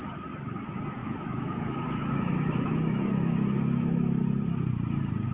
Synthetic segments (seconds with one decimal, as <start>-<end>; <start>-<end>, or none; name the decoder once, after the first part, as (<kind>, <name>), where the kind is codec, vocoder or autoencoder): 1.0-4.2 (autoencoder, DAC-VAE)